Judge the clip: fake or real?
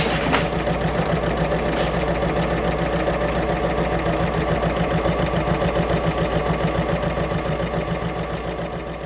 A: real